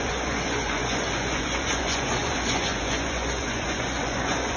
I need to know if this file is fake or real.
fake